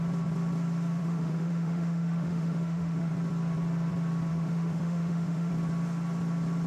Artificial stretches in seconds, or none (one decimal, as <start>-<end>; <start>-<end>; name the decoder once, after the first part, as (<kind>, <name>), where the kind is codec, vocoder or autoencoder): 1.0-3.1 (autoencoder, DAC-VAE); 4.3-5.5